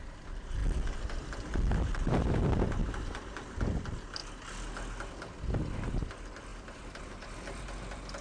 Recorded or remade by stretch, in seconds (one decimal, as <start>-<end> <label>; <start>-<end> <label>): 0.0-0.6 recorded; 0.6-2.4 remade; 2.4-2.8 recorded; 2.8-3.8 remade; 3.8-6.5 recorded; 6.5-7.6 remade; 7.6-8.2 recorded